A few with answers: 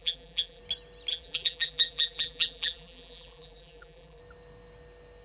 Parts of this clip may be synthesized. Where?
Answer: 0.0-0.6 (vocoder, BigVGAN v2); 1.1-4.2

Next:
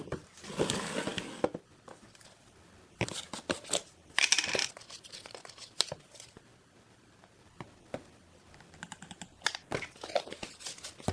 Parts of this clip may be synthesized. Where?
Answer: none

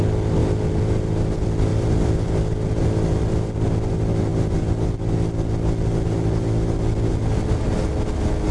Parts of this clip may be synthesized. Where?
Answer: 1.7-2.7 (vocoder, BigVGAN v2)

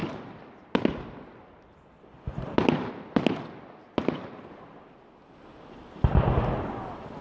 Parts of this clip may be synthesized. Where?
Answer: none

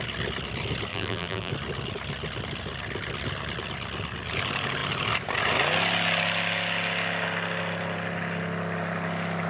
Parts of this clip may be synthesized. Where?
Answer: 0.9-1.5 (vocoder, BigVGAN v2)